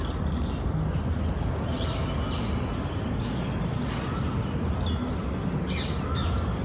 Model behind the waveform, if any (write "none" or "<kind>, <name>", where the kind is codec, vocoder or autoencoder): none